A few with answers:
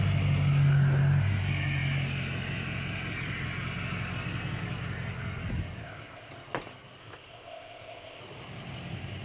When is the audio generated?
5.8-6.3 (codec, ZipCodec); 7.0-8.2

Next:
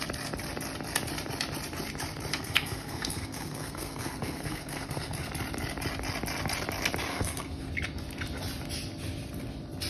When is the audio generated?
2.3-5.3 (codec, SNAC); 7.1-7.7